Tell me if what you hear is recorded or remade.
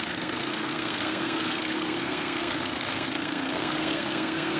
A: remade